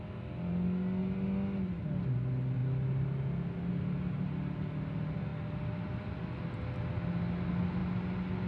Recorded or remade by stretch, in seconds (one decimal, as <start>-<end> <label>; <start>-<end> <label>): 0.0-8.5 recorded